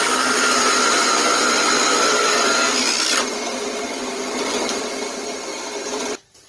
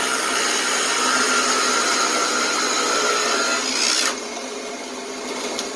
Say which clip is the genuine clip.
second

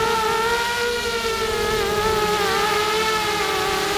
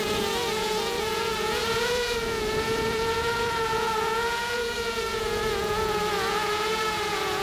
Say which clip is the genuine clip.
first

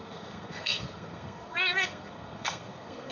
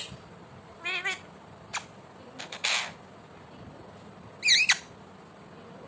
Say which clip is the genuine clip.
second